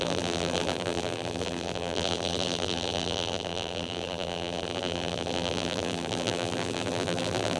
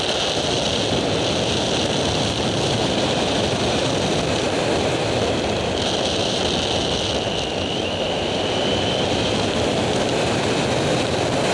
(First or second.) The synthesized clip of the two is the first